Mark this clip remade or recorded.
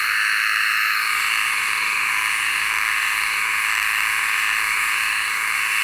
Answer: remade